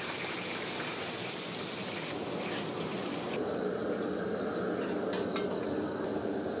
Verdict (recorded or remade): recorded